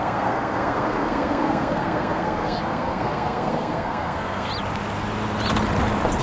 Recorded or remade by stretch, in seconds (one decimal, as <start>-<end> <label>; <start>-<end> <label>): 0.0-4.5 remade; 4.5-6.2 recorded

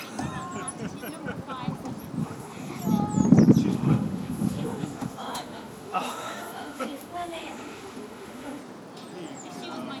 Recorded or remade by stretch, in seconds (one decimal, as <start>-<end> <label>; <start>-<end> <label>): 0.0-2.2 recorded; 2.2-2.8 remade; 2.8-3.7 recorded; 3.7-8.6 remade; 8.6-10.0 recorded

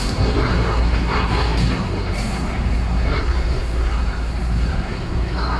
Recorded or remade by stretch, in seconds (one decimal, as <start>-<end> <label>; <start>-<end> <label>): 0.0-5.6 remade

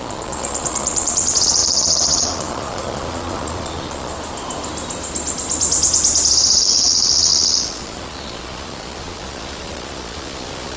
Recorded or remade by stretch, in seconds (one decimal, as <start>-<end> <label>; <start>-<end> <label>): 0.0-4.1 remade; 4.1-6.6 recorded; 6.6-10.8 remade

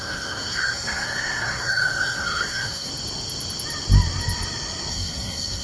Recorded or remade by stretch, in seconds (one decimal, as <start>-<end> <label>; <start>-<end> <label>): 0.0-2.9 remade; 2.9-4.9 recorded; 4.9-5.6 remade

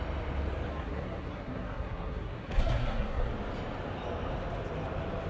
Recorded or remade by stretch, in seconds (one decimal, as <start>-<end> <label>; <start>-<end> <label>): 0.0-0.7 recorded; 0.7-3.3 remade; 3.3-5.3 recorded

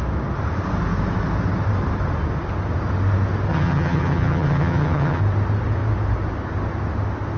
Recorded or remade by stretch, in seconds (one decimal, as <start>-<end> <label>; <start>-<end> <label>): 0.0-3.5 recorded; 3.5-5.2 remade; 5.2-7.4 recorded

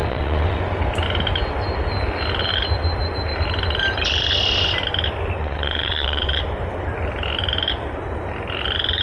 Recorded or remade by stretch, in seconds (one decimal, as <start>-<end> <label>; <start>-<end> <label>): 0.0-0.6 remade; 0.6-5.4 recorded; 5.4-6.4 remade; 6.4-9.0 recorded